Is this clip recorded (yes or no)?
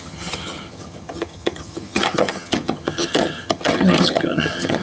no